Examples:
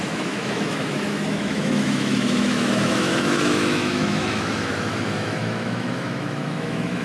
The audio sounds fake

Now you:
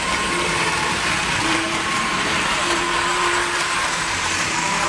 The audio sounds fake